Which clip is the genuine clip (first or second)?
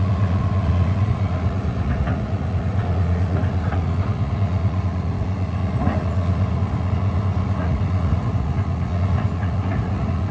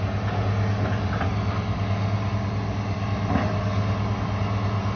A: second